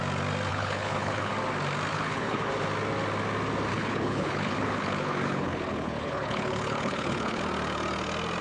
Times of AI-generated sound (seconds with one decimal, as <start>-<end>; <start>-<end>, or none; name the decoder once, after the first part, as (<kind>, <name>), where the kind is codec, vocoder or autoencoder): 0.5-1.3 (codec, HILCodec); 1.9-2.5; 3.7-7.4